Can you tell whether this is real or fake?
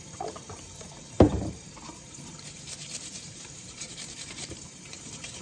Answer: fake